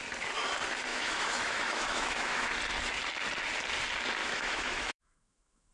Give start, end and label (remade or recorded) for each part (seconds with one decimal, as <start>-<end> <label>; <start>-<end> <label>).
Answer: 0.0-0.9 recorded; 0.9-2.5 remade; 2.5-4.2 recorded; 4.2-5.7 remade